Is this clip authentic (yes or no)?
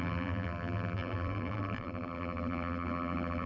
no